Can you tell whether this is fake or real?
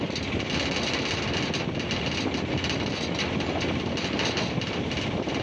real